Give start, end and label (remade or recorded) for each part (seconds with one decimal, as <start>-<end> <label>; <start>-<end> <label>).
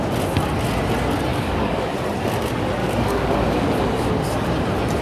0.0-1.3 recorded; 1.3-1.9 remade; 1.9-2.8 recorded; 2.8-4.1 remade; 4.1-5.0 recorded